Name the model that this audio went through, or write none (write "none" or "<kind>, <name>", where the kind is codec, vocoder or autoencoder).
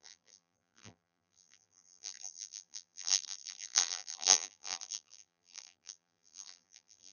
vocoder, BigVGAN v2